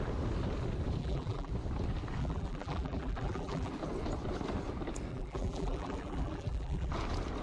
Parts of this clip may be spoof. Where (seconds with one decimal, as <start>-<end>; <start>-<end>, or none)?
1.0-1.5; 2.2-3.7; 5.1-6.9